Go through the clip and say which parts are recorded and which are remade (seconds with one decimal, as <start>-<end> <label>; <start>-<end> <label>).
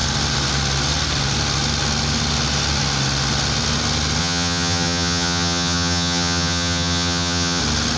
0.0-4.2 recorded; 4.2-7.6 remade; 7.6-8.0 recorded